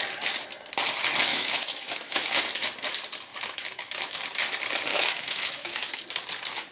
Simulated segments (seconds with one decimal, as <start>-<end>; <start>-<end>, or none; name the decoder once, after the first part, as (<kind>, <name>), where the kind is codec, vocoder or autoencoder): 1.3-2.4 (autoencoder, DAC-VAE); 3.3-4.2; 4.9-6.0

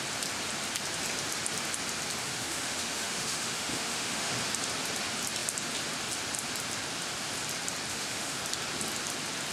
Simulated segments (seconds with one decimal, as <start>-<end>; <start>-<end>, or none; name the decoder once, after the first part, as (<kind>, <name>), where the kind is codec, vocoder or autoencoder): 2.2-4.3 (autoencoder, DAC-VAE); 7.9-8.4

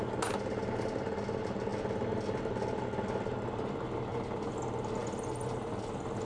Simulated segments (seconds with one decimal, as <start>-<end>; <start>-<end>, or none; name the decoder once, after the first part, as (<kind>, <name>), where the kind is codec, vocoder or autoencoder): none

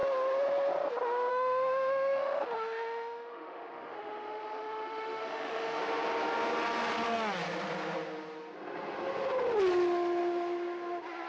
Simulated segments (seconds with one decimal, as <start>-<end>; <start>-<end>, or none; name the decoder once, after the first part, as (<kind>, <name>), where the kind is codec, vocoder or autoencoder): 1.3-5.8 (autoencoder, DAC-VAE)

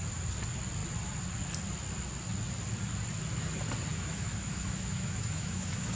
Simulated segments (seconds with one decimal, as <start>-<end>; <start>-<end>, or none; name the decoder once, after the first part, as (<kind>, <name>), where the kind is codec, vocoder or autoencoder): 3.9-6.0 (autoencoder, DAC-VAE)